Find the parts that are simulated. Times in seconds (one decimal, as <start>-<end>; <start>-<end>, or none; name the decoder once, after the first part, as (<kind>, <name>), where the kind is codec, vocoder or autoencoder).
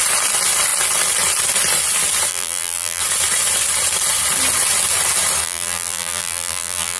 2.3-3.0 (vocoder, BigVGAN v2); 5.4-7.0